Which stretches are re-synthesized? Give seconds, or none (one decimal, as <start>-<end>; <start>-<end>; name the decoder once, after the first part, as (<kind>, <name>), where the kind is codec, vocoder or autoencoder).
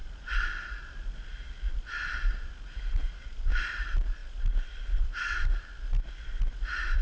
none